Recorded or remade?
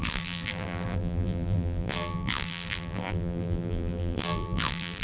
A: remade